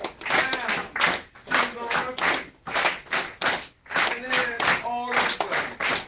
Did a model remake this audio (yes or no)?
no